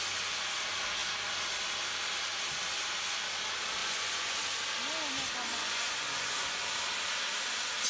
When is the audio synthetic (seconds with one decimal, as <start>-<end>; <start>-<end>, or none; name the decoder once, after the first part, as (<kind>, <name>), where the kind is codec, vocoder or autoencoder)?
3.8-4.4 (vocoder, Vocos); 5.5-6.5